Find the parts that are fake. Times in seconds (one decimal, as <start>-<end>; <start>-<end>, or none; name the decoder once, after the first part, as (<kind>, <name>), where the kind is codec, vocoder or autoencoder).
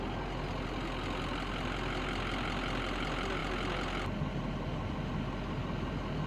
none